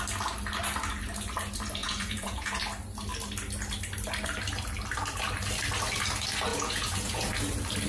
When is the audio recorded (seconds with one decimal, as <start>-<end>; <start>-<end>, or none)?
0.0-1.8; 2.6-6.5; 7.3-7.9